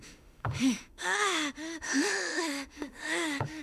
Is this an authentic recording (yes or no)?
no